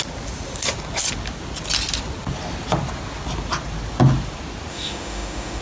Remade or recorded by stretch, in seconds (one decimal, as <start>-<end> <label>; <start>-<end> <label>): 0.0-4.7 recorded; 4.7-5.6 remade

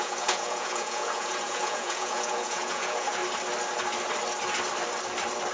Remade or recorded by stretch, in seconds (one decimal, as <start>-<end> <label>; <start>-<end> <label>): 0.0-3.2 remade; 3.2-5.5 recorded